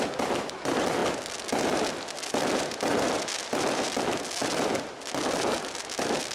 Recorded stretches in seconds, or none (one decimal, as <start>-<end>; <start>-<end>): 0.0-6.3